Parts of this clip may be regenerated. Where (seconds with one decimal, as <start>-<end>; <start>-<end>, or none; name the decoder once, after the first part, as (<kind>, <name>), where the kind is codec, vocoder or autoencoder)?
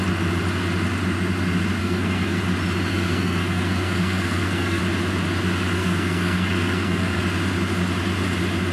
1.8-2.4 (codec, SNAC); 2.9-4.8; 5.8-7.2